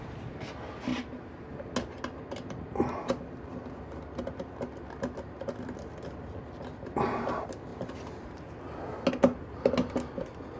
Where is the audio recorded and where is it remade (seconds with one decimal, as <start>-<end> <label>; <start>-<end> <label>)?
0.0-10.6 recorded